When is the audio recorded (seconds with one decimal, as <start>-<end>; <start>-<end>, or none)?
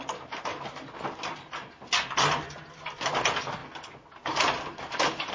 0.0-5.3